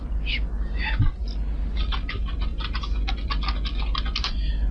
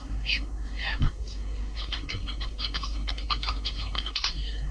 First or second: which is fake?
second